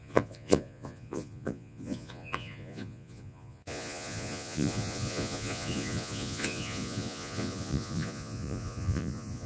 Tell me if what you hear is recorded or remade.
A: remade